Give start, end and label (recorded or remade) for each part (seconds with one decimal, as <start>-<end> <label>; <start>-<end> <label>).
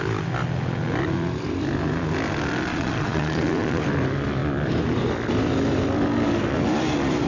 0.0-2.7 recorded; 2.7-3.8 remade; 3.8-7.3 recorded